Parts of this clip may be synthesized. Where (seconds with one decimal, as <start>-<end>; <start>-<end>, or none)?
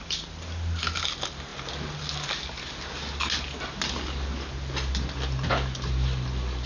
none